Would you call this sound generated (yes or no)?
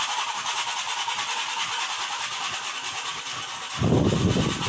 no